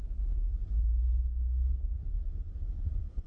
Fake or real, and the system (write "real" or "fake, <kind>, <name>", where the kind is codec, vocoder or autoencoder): real